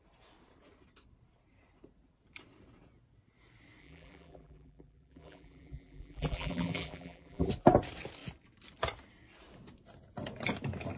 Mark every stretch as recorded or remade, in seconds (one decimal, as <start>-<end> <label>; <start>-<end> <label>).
0.0-3.8 recorded; 3.8-7.5 remade; 7.5-11.0 recorded